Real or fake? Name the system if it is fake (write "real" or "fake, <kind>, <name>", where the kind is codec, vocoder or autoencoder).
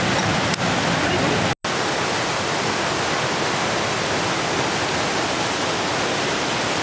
real